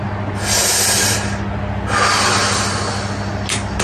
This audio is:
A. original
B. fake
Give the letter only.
A